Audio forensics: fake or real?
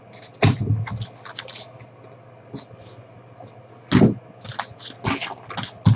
real